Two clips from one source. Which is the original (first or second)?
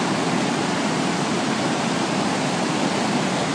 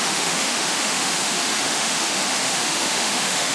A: first